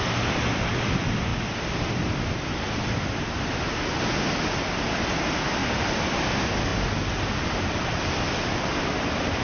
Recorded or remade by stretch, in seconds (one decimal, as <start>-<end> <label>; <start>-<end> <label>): 0.0-1.3 recorded; 1.3-1.8 remade; 1.8-5.6 recorded; 5.6-6.3 remade; 6.3-9.4 recorded